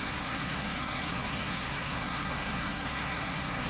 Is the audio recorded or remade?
remade